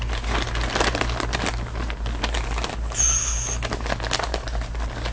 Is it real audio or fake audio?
real